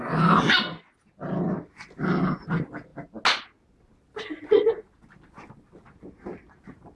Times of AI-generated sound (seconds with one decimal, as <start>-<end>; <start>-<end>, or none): none

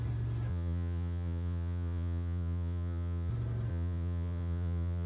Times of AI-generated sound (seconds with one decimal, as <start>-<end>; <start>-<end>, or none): 0.5-3.3; 3.7-5.1

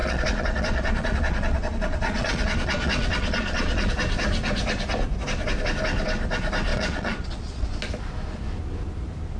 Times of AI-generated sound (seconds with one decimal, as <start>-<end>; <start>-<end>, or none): 0.0-3.9; 6.7-7.8

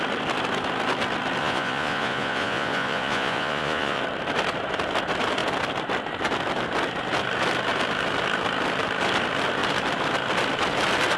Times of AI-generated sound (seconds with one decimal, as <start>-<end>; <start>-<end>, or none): 1.4-4.0

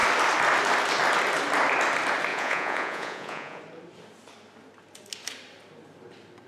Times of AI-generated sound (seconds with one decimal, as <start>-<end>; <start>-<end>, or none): 2.3-3.6

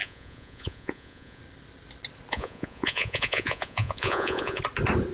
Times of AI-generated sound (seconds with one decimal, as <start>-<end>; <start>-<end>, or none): 0.0-1.4; 2.3-4.6

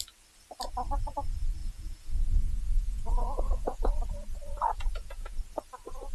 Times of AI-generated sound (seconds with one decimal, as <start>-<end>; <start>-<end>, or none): 1.6-3.9; 4.7-5.4